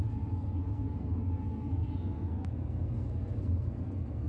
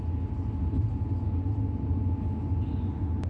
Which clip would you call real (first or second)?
second